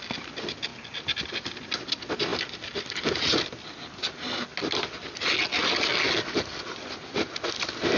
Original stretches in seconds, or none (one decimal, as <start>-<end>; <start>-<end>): 0.0-0.7; 1.6-2.3; 3.2-8.0